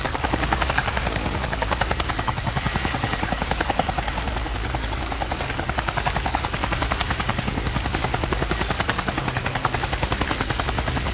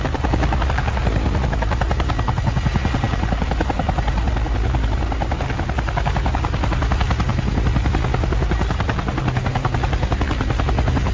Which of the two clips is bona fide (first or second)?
second